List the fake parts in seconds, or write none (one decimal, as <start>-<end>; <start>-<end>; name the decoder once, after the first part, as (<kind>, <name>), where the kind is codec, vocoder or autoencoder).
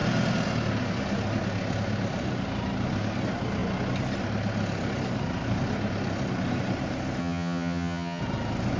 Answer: 7.2-8.2 (vocoder, HiFi-GAN)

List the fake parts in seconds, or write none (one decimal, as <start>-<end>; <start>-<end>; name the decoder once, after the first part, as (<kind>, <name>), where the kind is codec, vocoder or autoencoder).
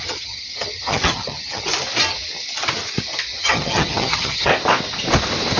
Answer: 0.0-1.7 (vocoder, HiFi-GAN); 3.4-4.5